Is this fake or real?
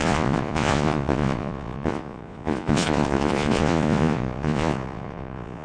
fake